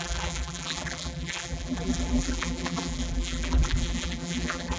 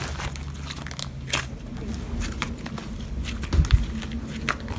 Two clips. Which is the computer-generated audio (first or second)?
first